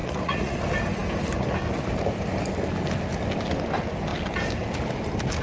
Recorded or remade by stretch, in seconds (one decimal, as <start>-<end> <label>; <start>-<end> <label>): 0.0-0.6 remade; 0.6-5.4 recorded